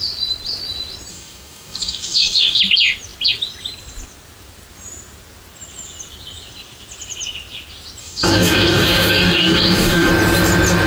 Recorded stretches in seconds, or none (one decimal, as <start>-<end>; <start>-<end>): 0.0-1.1; 2.6-8.0; 10.1-10.9